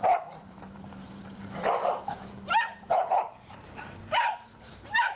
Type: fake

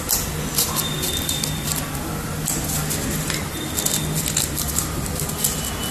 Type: real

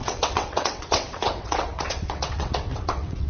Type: fake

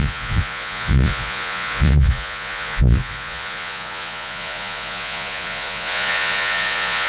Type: fake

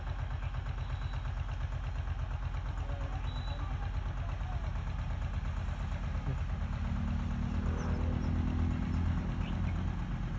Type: real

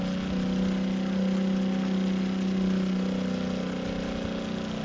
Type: real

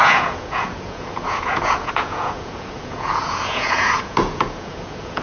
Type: fake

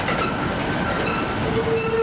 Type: real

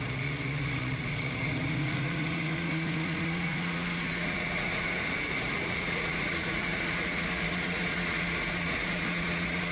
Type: fake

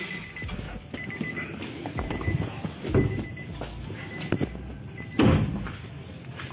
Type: real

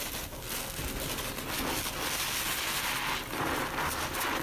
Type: real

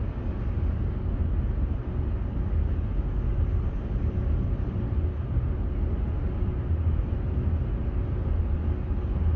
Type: real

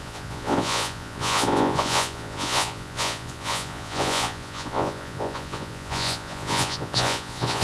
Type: fake